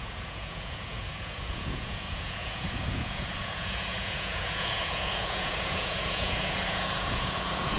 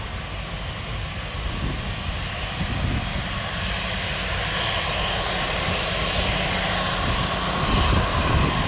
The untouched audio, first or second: second